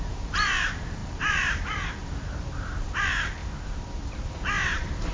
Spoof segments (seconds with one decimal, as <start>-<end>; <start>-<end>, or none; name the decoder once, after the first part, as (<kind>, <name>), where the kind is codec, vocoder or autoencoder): 0.0-3.4 (vocoder, BigVGAN v2)